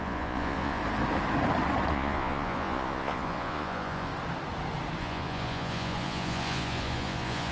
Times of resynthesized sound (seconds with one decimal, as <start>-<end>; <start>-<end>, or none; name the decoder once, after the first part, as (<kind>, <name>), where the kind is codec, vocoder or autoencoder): 0.0-0.8 (vocoder, Vocos); 1.9-4.1; 5.0-7.5